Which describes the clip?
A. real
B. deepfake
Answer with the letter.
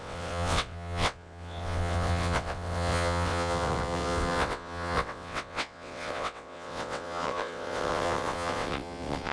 B